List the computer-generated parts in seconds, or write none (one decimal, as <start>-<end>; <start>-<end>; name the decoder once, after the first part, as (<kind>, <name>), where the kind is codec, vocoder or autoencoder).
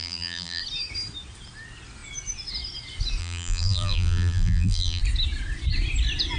0.0-0.6 (vocoder, BigVGAN v2); 3.2-5.0